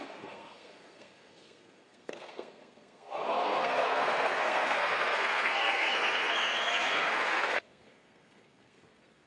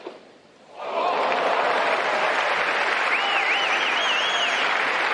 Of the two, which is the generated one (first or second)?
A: first